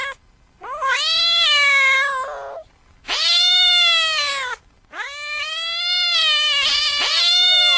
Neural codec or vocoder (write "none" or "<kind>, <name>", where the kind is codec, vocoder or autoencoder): none